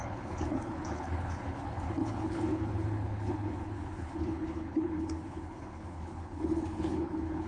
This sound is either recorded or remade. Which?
remade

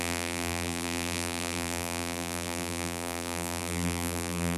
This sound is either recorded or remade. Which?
remade